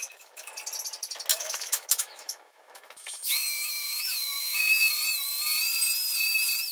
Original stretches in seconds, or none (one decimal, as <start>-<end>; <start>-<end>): 0.5-1.3; 4.9-6.7